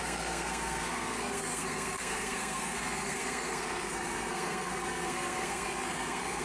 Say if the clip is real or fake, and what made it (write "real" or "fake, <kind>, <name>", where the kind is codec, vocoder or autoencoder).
fake, codec, SNAC